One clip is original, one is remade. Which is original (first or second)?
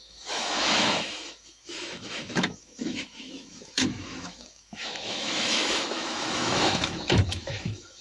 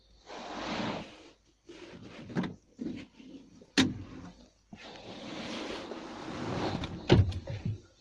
second